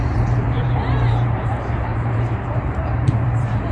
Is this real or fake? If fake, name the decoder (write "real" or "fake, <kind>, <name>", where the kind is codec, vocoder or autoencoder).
fake, vocoder, BigVGAN v2